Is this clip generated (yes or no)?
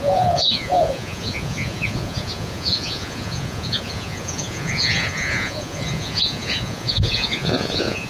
yes